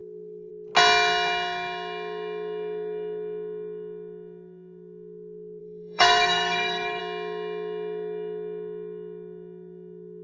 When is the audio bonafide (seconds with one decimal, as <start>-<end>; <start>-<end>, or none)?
0.5-5.6; 7.0-10.2